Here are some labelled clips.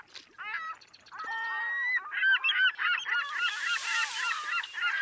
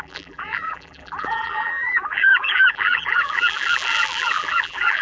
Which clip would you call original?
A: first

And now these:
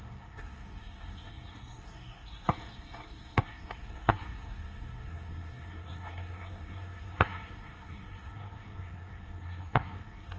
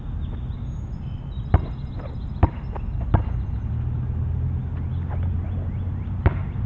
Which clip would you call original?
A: second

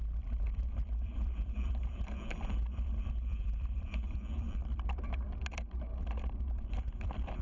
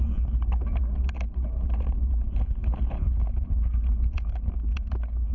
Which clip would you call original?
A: second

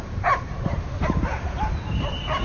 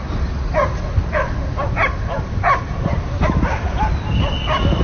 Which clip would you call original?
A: second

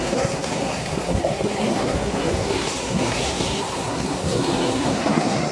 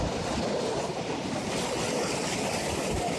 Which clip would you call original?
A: second